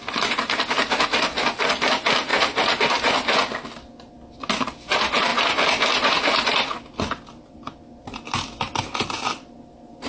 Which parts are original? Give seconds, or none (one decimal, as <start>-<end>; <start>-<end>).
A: 0.0-10.1